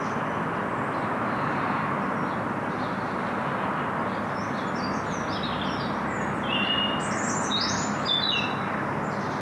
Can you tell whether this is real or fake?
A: real